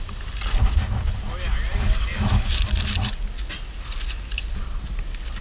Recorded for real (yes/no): yes